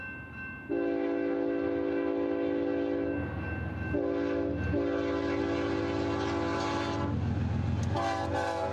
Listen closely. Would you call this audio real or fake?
real